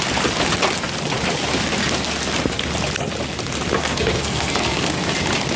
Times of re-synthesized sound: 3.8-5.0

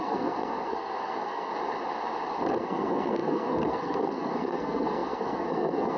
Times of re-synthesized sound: 0.0-1.5; 2.5-6.0

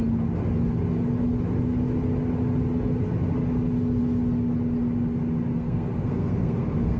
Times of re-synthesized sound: 5.5-7.0

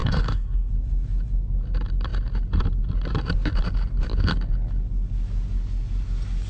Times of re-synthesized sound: 0.0-0.7

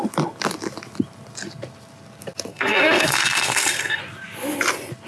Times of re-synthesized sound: 2.5-4.0

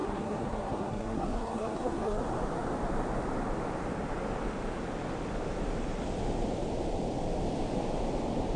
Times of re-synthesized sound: 0.0-2.2

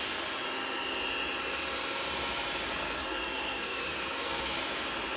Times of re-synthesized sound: 2.8-4.6